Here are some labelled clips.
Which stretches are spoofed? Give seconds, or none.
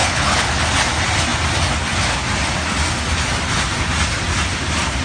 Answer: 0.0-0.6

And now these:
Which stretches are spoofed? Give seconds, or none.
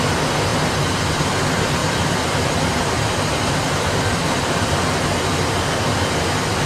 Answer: 1.8-4.7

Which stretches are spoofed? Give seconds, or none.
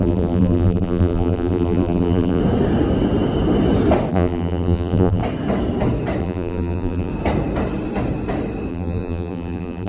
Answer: 0.0-2.4; 4.1-5.2; 6.2-7.1; 8.7-9.9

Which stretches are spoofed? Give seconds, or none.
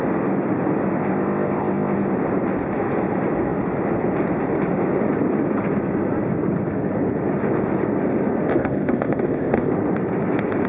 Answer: 1.0-2.1; 8.5-9.7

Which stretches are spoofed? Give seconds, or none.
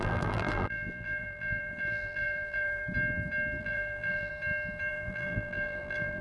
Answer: 0.0-2.8; 3.6-4.3; 4.9-6.2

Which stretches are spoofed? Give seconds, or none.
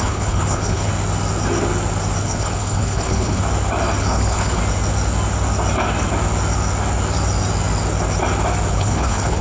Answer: 0.0-0.9; 2.2-3.4; 4.0-4.6; 8.7-9.4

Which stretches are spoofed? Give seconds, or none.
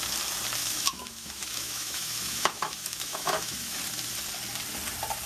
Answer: 0.6-3.8